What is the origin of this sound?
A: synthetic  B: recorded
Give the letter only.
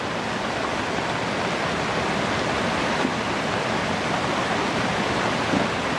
B